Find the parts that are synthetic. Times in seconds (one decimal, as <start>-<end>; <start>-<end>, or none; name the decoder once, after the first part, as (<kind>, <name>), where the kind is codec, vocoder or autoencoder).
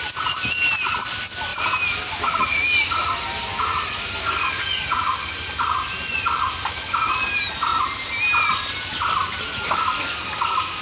none